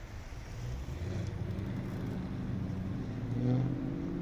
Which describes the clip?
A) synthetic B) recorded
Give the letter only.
B